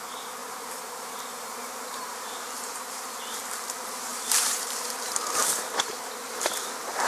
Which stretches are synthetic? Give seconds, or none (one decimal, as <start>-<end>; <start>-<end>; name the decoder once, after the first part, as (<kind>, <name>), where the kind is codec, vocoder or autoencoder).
0.4-2.8 (vocoder, BigVGAN v2); 4.1-5.0; 5.4-5.9